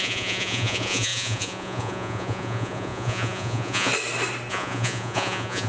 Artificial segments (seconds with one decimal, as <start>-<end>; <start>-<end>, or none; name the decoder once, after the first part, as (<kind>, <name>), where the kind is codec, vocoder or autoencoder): 0.0-3.9 (vocoder, Vocos); 4.5-5.7